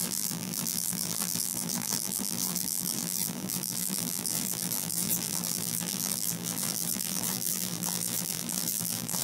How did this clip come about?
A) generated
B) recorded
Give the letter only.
A